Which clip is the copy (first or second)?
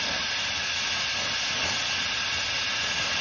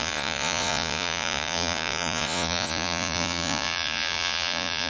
second